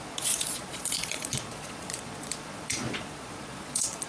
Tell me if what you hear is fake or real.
fake